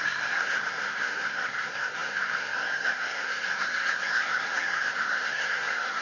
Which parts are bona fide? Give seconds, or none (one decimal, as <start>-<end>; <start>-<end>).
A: none